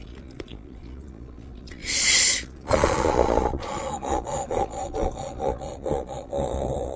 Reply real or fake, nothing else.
fake